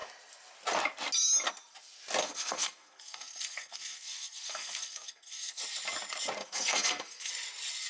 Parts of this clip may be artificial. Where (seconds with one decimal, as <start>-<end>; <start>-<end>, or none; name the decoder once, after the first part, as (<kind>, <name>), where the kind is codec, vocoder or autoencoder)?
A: 2.2-5.6 (codec, SNAC); 6.4-7.3